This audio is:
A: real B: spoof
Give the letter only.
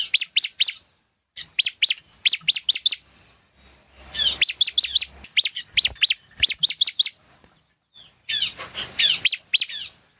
A